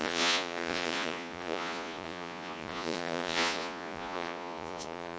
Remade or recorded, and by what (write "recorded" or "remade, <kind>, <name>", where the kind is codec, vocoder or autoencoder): remade, vocoder, Vocos